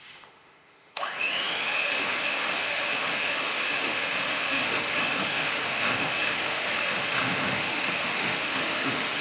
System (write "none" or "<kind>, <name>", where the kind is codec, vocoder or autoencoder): autoencoder, DAC-VAE